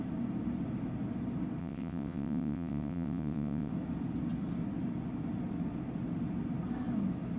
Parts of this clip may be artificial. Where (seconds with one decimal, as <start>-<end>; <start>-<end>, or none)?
1.6-3.7